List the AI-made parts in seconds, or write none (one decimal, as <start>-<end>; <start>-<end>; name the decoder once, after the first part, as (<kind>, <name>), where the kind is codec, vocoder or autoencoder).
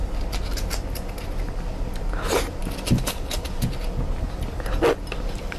none